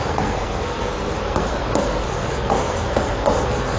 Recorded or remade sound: remade